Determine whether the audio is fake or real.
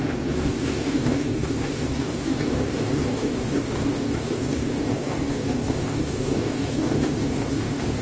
fake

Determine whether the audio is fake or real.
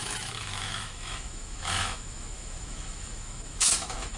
fake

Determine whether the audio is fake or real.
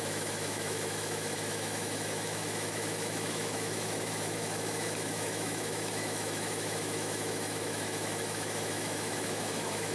fake